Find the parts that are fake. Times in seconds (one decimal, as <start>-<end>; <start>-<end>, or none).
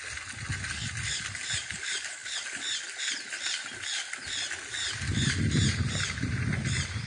none